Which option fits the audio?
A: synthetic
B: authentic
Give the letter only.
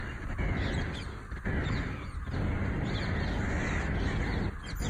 B